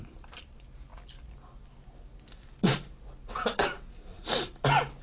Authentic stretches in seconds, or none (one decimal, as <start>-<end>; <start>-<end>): 0.0-5.0